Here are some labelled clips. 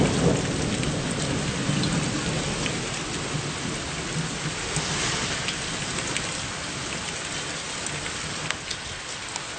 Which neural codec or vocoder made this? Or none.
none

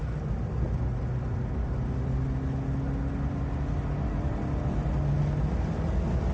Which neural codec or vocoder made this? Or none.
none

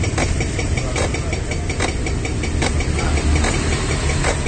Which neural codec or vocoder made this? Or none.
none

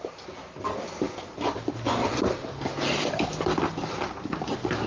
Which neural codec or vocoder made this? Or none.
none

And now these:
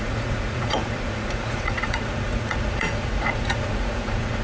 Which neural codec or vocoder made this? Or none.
vocoder, Vocos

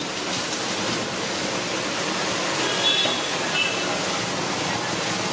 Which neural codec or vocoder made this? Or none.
none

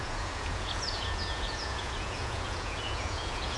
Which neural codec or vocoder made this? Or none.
vocoder, Vocos